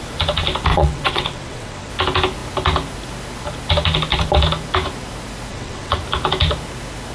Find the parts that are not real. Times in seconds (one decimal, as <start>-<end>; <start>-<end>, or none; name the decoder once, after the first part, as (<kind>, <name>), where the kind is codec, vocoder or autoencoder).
0.7-1.9 (vocoder, WaveNeXt); 5.5-6.0